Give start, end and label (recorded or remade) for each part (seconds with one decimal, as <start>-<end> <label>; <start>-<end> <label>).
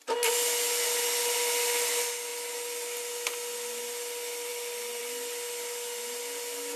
0.0-6.8 recorded